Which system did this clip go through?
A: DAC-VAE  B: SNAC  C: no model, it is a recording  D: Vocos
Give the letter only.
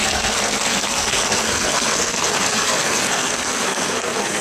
B